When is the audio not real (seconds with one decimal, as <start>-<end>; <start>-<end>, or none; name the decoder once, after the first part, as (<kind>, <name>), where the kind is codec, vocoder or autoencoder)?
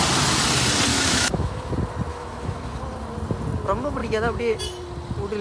0.9-1.7 (autoencoder, DAC-VAE); 2.1-2.8; 4.0-4.6